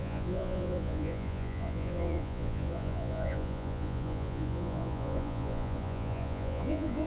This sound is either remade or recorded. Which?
remade